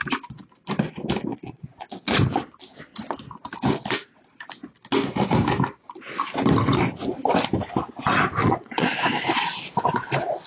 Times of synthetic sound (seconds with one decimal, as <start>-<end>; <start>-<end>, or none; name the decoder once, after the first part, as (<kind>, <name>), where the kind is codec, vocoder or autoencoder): 1.3-2.2 (vocoder, Vocos); 8.4-8.9